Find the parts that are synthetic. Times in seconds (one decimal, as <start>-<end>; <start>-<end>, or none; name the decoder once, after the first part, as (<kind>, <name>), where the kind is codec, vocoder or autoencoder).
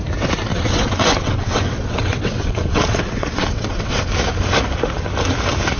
0.5-4.0 (vocoder, WaveNeXt)